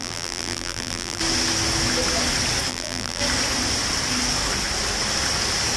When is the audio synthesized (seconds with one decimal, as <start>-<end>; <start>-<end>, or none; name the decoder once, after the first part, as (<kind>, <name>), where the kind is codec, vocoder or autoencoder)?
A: 0.0-1.2 (vocoder, BigVGAN v2); 2.7-3.2